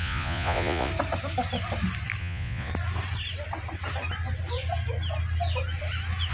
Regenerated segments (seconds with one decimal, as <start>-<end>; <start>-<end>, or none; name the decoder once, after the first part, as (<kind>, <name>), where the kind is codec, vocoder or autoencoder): 0.0-0.9 (vocoder, Vocos); 2.2-2.7